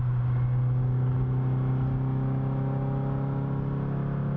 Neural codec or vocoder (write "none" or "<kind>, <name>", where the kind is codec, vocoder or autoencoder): none